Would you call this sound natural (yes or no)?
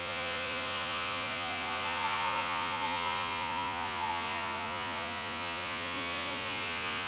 no